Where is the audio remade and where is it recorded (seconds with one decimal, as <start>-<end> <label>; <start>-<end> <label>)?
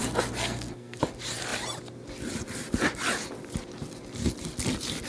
0.0-0.4 recorded; 0.4-1.0 remade; 1.0-5.1 recorded